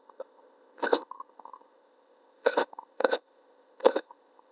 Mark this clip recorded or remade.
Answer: remade